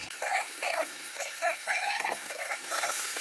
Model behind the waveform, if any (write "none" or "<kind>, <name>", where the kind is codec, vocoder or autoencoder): codec, SNAC